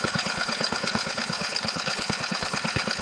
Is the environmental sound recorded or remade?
remade